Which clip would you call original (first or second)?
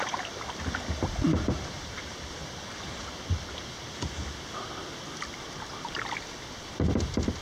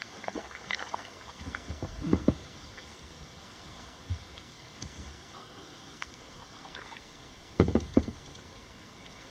first